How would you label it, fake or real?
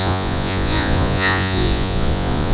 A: fake